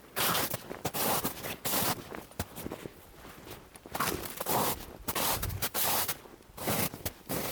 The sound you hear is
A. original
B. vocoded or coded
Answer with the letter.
A